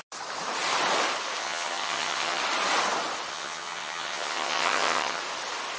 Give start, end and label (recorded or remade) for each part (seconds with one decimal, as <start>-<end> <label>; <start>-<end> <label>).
0.0-1.4 recorded; 1.4-2.4 remade; 2.4-3.3 recorded; 3.3-5.2 remade; 5.2-5.8 recorded